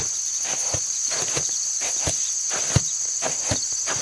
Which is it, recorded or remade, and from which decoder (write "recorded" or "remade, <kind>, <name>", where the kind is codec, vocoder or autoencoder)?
recorded